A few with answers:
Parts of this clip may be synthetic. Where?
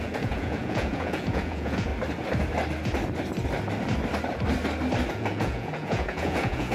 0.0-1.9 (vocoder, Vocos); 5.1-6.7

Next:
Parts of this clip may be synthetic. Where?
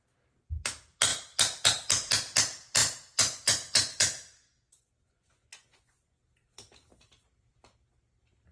2.8-6.2 (vocoder, Vocos)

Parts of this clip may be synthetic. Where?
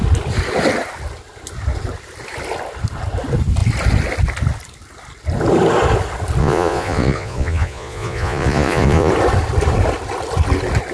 6.4-9.1 (vocoder, Vocos)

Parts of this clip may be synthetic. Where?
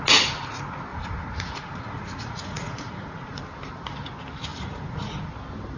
0.9-3.4 (vocoder, Vocos); 4.5-5.3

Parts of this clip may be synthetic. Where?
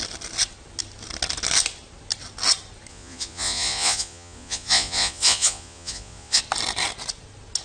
2.9-6.4 (vocoder, Vocos)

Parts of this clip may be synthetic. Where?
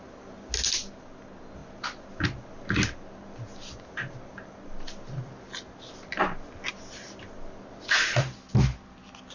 none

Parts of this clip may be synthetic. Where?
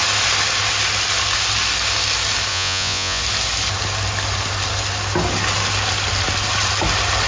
2.5-3.2 (vocoder, Vocos)